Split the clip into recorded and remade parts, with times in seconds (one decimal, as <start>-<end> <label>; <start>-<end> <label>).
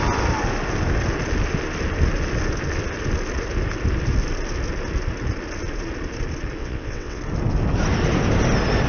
0.0-6.6 recorded; 6.6-7.2 remade; 7.2-8.9 recorded